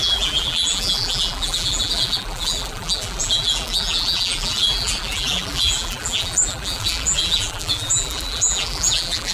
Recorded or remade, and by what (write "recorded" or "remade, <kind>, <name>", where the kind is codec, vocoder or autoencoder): remade, vocoder, BigVGAN v2